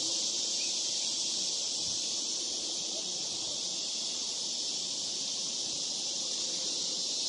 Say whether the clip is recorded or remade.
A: remade